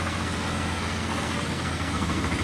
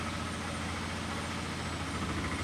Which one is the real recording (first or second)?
second